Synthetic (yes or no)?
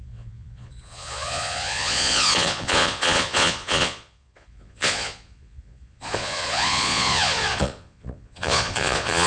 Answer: yes